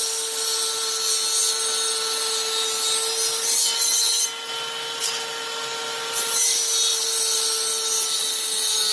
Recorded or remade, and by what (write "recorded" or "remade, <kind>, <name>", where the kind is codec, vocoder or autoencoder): recorded